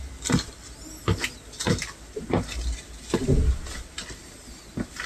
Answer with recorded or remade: recorded